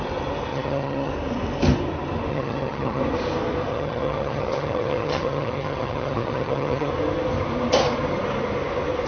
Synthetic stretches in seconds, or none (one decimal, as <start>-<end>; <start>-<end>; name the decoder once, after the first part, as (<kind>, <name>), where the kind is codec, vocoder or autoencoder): 0.5-1.1 (vocoder, HiFi-GAN); 2.3-3.0; 3.7-6.9